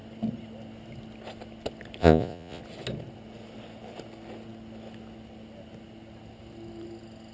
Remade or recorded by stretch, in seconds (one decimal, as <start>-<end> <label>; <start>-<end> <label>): 0.0-2.0 recorded; 2.0-2.6 remade; 2.6-7.3 recorded